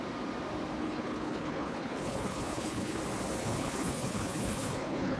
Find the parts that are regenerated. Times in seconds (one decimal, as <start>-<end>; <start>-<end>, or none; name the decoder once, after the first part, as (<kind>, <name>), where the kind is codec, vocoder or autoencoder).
0.8-3.0 (codec, HILCodec); 3.4-5.2